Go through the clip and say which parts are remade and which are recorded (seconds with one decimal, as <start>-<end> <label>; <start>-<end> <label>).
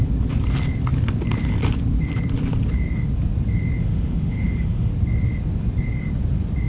0.0-3.8 recorded; 3.8-4.9 remade; 4.9-6.7 recorded